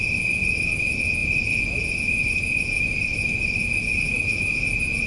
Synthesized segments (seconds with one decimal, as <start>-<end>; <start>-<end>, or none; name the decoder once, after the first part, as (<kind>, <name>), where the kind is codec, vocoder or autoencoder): none

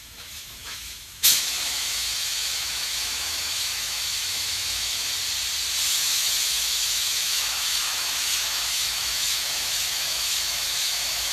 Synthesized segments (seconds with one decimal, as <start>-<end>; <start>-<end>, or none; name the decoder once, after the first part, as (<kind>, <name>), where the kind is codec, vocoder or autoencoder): 0.0-5.1 (autoencoder, DAC-VAE); 5.9-11.3

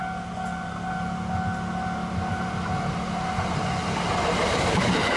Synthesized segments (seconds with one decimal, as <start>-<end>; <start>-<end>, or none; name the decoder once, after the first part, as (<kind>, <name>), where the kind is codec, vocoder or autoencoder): 2.3-5.2 (vocoder, BigVGAN v2)

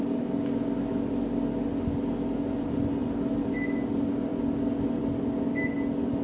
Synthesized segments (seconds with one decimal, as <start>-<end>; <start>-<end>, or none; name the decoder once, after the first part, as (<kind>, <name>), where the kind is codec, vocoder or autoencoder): none

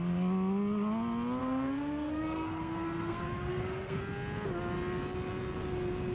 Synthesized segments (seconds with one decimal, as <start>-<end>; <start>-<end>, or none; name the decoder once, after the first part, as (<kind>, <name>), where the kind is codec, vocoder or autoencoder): 1.4-4.0 (codec, SNAC)

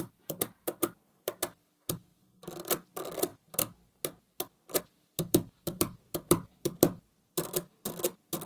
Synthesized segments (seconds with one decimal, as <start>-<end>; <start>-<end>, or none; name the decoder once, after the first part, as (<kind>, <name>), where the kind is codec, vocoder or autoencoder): 0.0-3.3 (vocoder, BigVGAN v2); 4.8-7.1

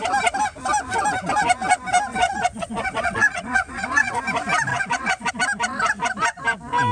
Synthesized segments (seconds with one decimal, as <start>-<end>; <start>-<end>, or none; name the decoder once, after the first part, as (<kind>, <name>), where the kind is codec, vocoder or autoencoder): 2.1-4.2 (vocoder, Vocos); 4.7-5.3